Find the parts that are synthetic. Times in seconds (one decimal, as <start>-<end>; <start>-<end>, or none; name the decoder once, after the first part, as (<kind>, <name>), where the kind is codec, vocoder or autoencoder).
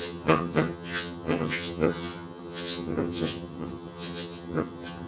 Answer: 0.0-5.1 (vocoder, HiFi-GAN)